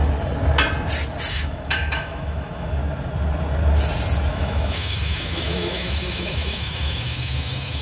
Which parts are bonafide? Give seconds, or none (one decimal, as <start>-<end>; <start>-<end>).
0.0-1.3; 2.8-4.3